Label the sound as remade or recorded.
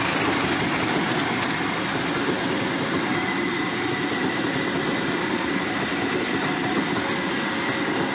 recorded